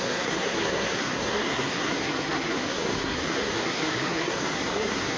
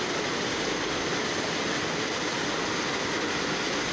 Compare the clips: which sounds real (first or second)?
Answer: second